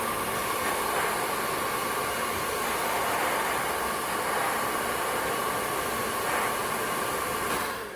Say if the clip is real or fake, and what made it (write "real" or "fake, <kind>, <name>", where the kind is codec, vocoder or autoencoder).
real